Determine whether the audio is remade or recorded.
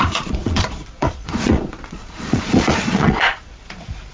remade